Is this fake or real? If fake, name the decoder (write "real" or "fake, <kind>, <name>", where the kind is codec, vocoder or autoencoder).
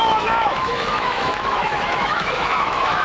fake, autoencoder, DAC-VAE